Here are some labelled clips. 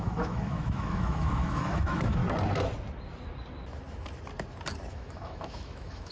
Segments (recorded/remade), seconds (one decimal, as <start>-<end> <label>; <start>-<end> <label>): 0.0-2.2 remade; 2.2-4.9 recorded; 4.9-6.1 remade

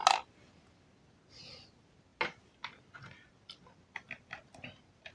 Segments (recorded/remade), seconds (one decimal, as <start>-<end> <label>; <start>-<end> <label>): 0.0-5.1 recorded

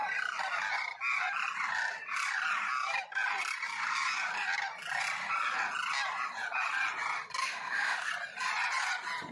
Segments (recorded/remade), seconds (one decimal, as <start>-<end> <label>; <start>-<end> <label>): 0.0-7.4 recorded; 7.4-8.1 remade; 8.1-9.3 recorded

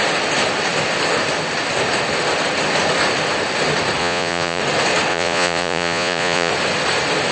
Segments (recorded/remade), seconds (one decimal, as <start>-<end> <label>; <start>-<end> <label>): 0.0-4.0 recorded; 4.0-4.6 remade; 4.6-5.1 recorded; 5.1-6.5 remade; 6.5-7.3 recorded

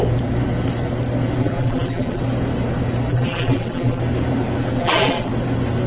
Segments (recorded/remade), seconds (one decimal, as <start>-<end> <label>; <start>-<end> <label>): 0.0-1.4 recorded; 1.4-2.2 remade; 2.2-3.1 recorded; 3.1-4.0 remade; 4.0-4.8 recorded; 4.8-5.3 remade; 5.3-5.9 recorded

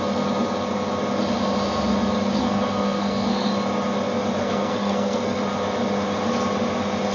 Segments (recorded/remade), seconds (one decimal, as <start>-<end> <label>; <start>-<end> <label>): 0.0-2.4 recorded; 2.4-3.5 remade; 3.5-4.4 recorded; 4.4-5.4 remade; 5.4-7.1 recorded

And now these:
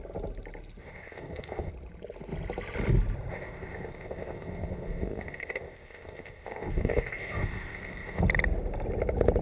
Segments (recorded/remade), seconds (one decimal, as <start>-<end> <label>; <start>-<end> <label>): 0.0-0.8 recorded; 0.8-1.7 remade; 1.7-3.3 recorded; 3.3-8.2 remade; 8.2-9.4 recorded

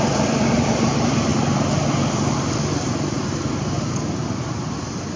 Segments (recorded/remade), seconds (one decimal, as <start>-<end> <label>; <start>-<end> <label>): 0.0-5.2 recorded